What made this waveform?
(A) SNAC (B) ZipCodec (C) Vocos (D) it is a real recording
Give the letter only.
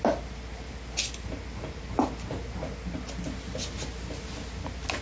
D